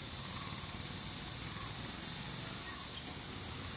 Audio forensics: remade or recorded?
recorded